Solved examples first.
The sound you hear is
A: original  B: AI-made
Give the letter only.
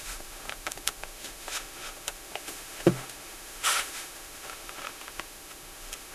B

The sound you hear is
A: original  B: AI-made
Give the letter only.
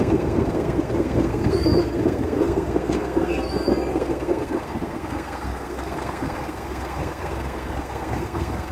B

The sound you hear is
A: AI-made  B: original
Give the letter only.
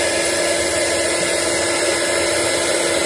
B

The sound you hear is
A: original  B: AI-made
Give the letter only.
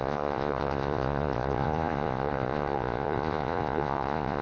B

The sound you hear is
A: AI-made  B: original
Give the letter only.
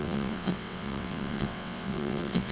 A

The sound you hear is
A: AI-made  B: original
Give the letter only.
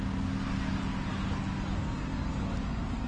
B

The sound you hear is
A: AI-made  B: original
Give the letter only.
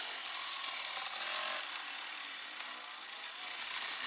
B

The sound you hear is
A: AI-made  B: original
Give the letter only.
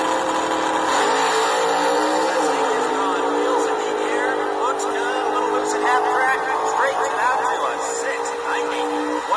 B